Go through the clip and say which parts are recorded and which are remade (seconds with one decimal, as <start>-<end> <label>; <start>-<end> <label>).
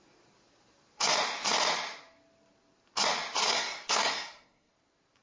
0.0-3.4 recorded; 3.4-4.7 remade; 4.7-5.2 recorded